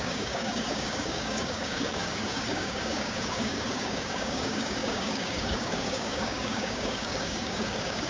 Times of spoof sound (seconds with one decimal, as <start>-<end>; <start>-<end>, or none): 0.0-8.1